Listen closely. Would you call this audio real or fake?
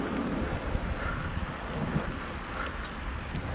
real